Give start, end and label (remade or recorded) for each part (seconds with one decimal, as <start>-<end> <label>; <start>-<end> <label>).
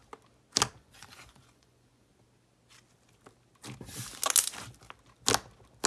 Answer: 0.0-0.7 recorded; 0.7-2.1 remade; 2.1-5.9 recorded